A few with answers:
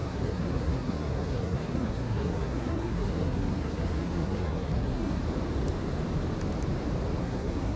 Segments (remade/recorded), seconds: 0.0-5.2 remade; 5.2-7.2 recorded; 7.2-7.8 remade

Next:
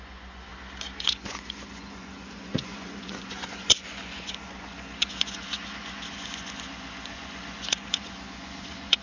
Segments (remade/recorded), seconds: 0.0-0.5 remade; 0.5-1.0 recorded; 1.0-9.0 remade